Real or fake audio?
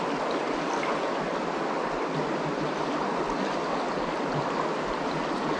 real